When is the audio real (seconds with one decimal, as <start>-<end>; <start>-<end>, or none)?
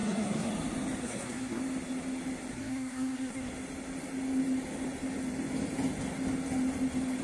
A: 0.5-1.0; 1.6-2.5; 3.5-7.2